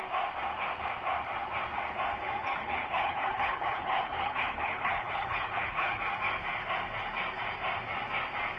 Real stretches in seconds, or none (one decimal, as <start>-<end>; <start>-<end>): 0.0-2.5; 6.0-8.6